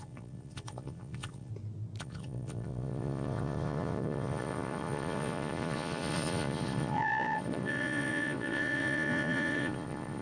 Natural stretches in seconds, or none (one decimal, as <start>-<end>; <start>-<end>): 1.5-2.0